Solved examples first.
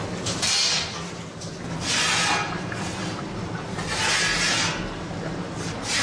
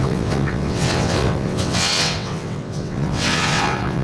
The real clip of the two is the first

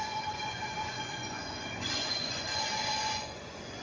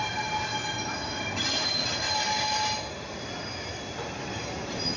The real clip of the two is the second